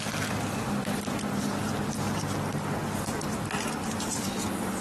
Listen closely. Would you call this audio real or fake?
real